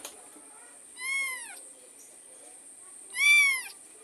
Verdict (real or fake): fake